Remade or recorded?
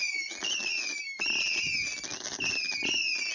recorded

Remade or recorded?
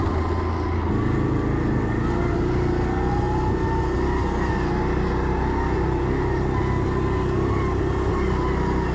recorded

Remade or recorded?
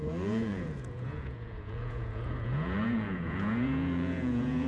remade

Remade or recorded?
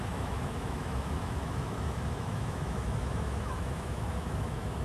remade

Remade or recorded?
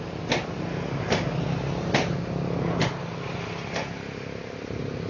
recorded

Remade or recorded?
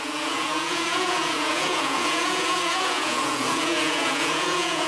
remade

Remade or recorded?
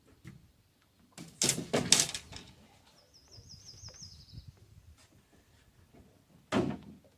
recorded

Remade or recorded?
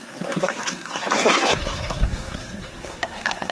remade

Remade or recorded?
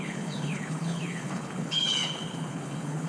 remade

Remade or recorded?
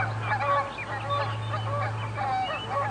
recorded